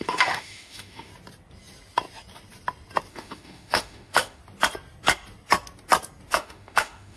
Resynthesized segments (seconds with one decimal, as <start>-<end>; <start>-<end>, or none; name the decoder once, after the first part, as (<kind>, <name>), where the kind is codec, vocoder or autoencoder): 0.0-1.1 (autoencoder, DAC-VAE); 3.1-4.4; 6.3-7.2